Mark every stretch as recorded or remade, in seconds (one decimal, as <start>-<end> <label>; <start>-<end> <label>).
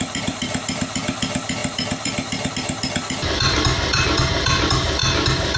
0.0-5.0 remade; 5.0-5.6 recorded